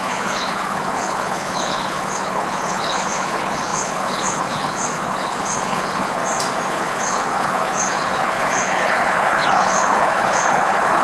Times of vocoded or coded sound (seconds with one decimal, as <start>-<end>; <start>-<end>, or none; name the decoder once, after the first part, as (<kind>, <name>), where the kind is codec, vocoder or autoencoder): 0.0-6.2 (codec, HILCodec); 6.7-11.0